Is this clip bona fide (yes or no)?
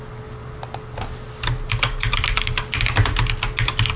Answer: yes